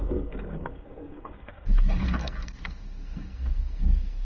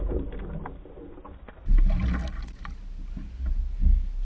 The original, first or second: second